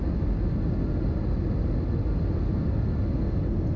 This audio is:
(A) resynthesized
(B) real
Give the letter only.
B